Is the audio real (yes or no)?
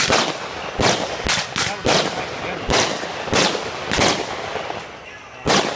yes